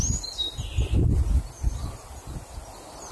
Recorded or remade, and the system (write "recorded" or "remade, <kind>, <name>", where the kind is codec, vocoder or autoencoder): recorded